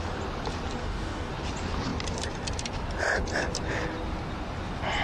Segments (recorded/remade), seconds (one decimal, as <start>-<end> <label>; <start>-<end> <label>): 0.0-0.8 recorded; 0.8-1.3 remade; 1.3-5.0 recorded